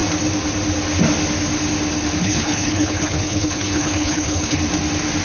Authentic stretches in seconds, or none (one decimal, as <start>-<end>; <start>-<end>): 0.0-2.2; 4.6-5.2

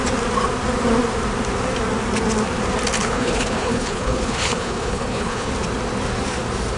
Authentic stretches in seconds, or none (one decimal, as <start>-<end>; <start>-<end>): 0.0-3.0; 5.5-6.8

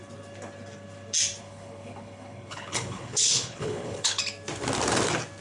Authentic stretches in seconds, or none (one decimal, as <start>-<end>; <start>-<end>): 0.0-1.4; 4.2-5.4

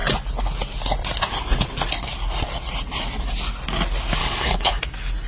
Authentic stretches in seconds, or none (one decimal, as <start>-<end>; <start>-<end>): 0.0-4.2; 4.8-5.3

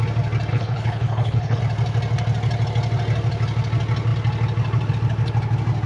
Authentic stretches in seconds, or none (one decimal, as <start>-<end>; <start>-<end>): 0.0-0.5; 1.6-5.9

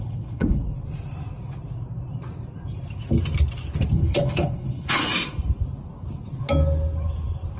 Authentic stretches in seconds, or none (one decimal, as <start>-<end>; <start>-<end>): 0.6-3.9; 5.0-7.6

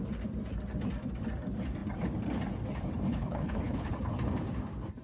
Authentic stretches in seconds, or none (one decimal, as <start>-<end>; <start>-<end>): 0.0-3.1; 3.9-5.0

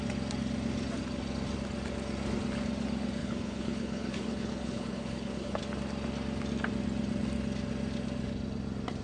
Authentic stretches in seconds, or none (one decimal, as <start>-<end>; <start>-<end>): 0.0-3.2; 5.6-9.0